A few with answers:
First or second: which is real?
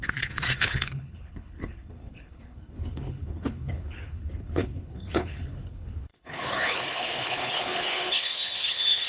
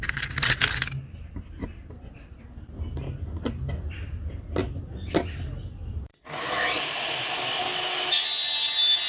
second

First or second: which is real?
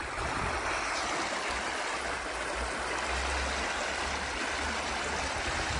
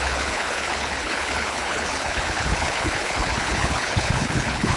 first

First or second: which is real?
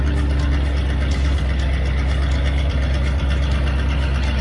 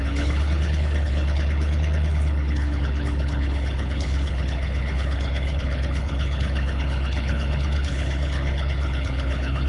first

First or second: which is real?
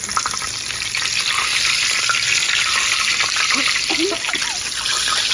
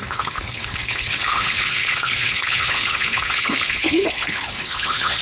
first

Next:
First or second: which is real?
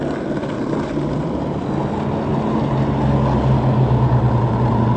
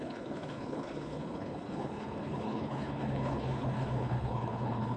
first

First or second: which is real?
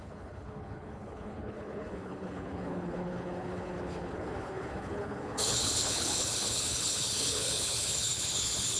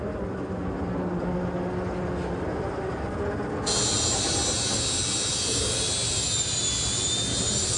second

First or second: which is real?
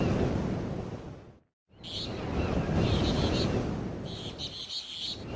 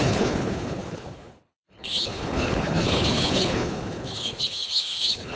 first